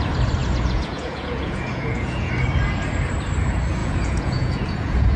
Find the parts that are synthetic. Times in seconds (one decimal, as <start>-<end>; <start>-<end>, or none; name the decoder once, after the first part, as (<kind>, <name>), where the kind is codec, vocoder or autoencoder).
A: 0.4-2.3 (vocoder, Vocos); 3.8-5.2